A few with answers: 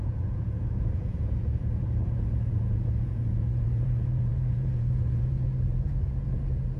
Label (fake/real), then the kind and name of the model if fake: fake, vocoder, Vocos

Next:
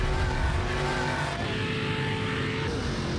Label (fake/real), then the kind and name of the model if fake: real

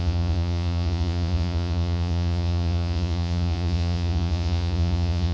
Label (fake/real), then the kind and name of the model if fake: fake, vocoder, Vocos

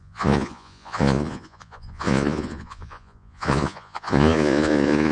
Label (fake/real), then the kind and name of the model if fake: fake, vocoder, Vocos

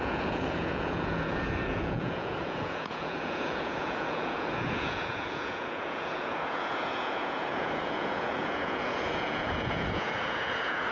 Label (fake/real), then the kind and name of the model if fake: fake, vocoder, Vocos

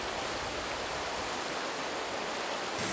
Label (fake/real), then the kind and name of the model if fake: real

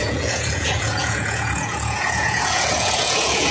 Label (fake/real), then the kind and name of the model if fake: fake, vocoder, Vocos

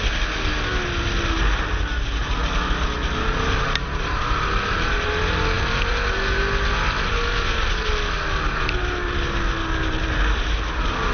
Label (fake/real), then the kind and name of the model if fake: real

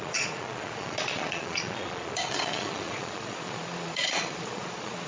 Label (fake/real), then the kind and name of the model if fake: fake, vocoder, Vocos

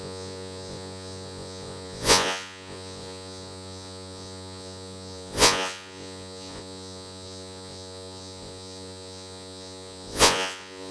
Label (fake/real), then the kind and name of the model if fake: fake, vocoder, Vocos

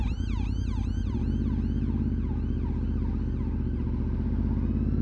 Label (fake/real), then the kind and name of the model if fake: real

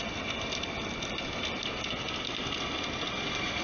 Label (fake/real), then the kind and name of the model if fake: real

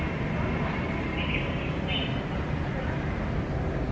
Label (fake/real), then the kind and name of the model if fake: real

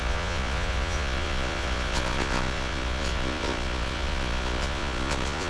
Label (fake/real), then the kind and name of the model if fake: fake, vocoder, Vocos